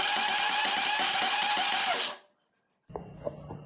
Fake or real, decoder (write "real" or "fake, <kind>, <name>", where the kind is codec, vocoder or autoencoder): real